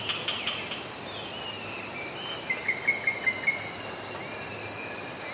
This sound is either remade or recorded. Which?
recorded